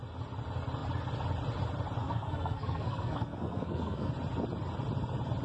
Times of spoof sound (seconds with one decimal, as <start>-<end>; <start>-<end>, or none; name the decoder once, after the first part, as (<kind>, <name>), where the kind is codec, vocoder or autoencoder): 2.0-4.1 (codec, SNAC)